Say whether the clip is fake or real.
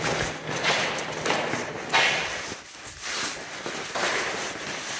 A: real